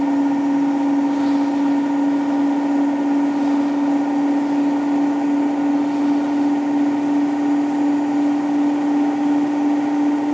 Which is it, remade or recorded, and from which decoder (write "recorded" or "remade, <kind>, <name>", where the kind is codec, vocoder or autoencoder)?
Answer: recorded